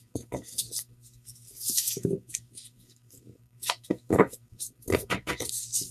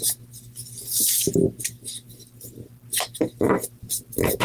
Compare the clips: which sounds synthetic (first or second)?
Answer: first